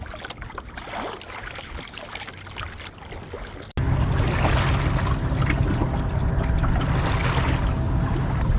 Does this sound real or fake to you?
real